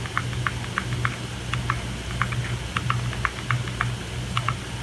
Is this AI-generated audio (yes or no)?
no